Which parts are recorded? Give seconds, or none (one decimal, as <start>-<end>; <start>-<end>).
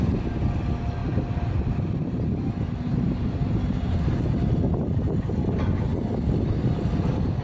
0.0-2.9; 5.0-7.4